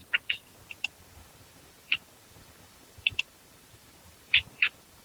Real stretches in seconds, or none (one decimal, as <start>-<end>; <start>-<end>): 0.0-0.9